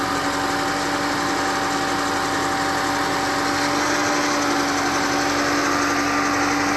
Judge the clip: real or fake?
real